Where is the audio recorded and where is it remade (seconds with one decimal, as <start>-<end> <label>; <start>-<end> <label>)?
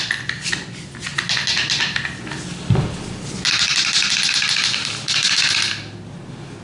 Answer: 0.0-6.6 recorded